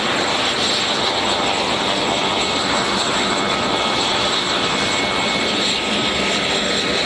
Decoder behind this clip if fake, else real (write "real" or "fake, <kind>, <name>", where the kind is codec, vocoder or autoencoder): real